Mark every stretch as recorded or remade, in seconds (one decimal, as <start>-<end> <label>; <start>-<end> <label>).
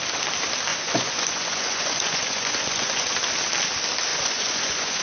0.0-0.7 recorded; 0.7-3.1 remade; 3.1-4.1 recorded; 4.1-5.0 remade